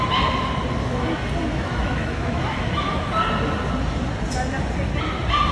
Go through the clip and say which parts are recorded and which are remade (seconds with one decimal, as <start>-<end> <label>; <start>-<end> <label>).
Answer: 0.0-1.5 recorded; 1.5-3.1 remade; 3.1-5.5 recorded